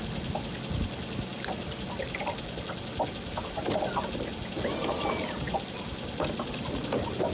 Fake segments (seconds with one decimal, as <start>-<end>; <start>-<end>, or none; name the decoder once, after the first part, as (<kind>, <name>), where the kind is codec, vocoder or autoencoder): none